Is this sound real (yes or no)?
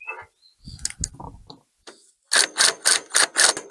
yes